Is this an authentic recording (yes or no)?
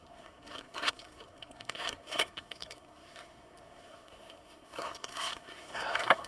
no